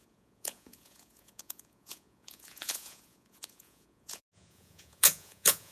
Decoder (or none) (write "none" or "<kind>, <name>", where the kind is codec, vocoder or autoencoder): vocoder, Vocos